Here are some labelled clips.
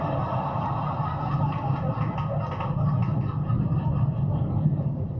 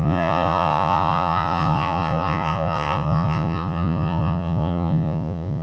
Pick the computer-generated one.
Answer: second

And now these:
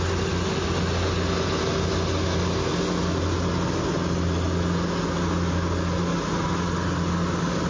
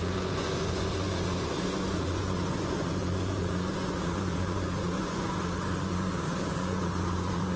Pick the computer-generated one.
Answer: second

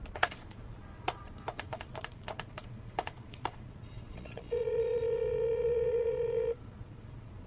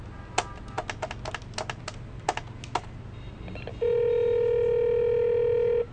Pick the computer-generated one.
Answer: first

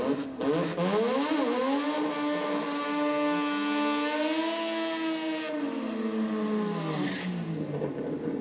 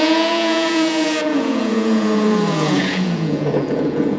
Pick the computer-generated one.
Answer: second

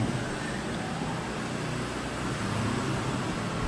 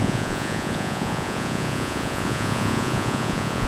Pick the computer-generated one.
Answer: second